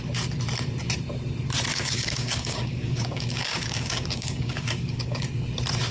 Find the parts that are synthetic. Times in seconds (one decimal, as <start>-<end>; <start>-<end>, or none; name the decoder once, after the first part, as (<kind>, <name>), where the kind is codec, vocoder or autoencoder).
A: 1.7-5.2 (codec, DAC)